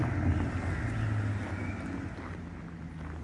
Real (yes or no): yes